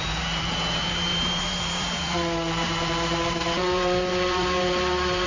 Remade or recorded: remade